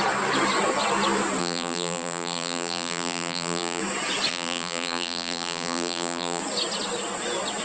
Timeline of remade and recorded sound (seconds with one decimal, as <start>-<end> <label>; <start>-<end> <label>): 0.0-1.4 recorded; 1.4-3.8 remade; 3.8-4.3 recorded; 4.3-6.4 remade; 6.4-7.6 recorded